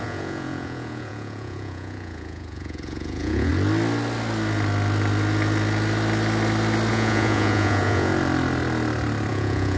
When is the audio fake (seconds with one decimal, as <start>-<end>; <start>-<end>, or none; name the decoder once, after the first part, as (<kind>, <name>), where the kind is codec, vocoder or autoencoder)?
0.0-3.5 (vocoder, Vocos); 6.9-8.1; 9.3-9.8